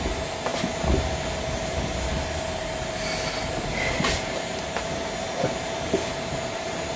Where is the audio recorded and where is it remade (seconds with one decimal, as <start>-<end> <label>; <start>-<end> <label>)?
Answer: 0.0-7.0 recorded